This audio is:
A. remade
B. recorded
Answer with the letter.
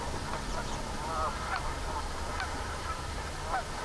B